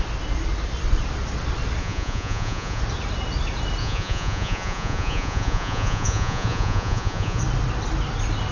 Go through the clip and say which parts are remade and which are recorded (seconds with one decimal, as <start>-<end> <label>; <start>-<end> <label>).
0.0-1.8 recorded; 1.8-2.8 remade; 2.8-3.8 recorded; 3.8-7.4 remade; 7.4-8.5 recorded

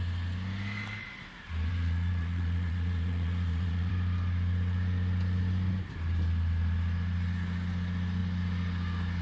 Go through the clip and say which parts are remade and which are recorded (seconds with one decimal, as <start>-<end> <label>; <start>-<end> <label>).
0.0-1.7 recorded; 1.7-3.9 remade; 3.9-9.2 recorded

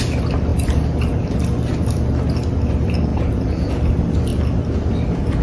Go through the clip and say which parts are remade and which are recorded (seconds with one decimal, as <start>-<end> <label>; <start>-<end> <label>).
0.0-3.1 recorded; 3.1-3.7 remade; 3.7-5.4 recorded

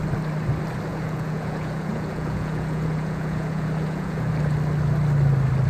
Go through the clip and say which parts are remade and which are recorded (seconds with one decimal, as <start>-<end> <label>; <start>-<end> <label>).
0.0-0.9 recorded; 0.9-4.3 remade; 4.3-5.7 recorded

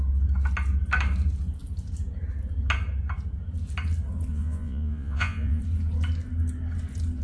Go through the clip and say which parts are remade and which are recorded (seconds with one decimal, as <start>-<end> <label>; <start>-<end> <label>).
0.0-4.3 recorded; 4.3-5.6 remade; 5.6-7.2 recorded